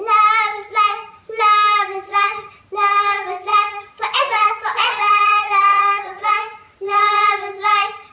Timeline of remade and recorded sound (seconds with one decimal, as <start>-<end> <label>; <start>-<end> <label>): 0.0-2.1 recorded; 2.1-2.6 remade; 2.6-3.5 recorded; 3.5-7.3 remade; 7.3-8.1 recorded